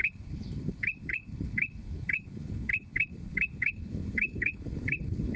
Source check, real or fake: fake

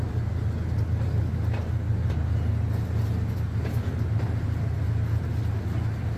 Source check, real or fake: real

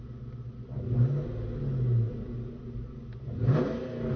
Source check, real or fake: real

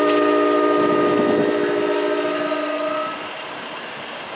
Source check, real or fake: real